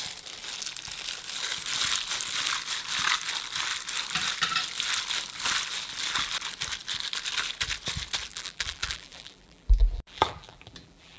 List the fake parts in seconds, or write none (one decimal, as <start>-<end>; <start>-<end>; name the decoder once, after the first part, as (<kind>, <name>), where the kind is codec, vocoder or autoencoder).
8.3-11.2 (vocoder, BigVGAN v2)